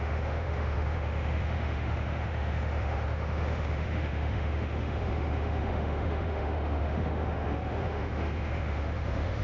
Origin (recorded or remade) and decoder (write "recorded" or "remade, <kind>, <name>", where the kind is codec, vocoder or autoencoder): remade, autoencoder, DAC-VAE